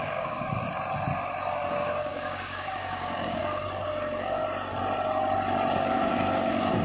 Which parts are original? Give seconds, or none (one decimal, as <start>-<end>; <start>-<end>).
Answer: 0.6-1.7; 4.4-5.8